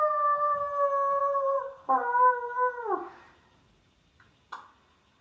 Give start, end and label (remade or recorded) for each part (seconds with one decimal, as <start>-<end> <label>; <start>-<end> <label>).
0.0-1.2 recorded; 1.2-4.3 remade; 4.3-5.2 recorded

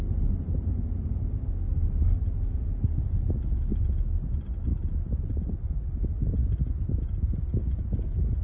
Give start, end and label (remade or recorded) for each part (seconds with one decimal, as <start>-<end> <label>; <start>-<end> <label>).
0.0-8.4 recorded

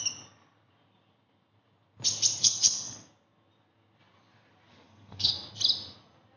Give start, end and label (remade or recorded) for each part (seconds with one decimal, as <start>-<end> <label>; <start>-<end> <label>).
0.0-2.4 recorded; 2.4-3.1 remade; 3.1-4.7 recorded; 4.7-5.3 remade; 5.3-6.4 recorded

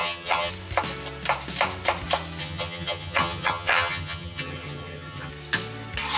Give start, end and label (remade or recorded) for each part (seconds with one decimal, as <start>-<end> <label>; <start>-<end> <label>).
0.0-0.5 remade; 0.5-2.4 recorded; 2.4-5.3 remade; 5.3-6.2 recorded

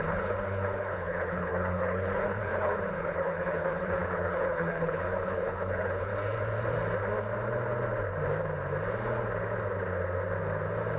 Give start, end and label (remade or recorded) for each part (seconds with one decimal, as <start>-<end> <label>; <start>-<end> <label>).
0.0-6.1 remade; 6.1-11.0 recorded

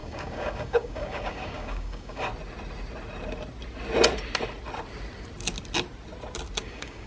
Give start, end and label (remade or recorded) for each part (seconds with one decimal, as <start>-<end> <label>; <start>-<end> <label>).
0.0-2.3 remade; 2.3-6.6 recorded; 6.6-7.1 remade